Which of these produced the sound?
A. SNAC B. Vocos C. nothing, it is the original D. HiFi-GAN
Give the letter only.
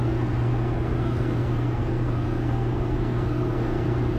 A